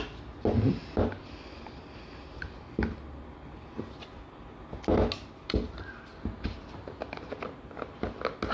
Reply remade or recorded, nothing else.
recorded